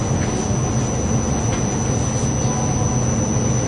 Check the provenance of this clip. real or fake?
real